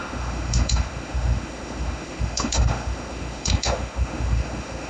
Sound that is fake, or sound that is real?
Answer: fake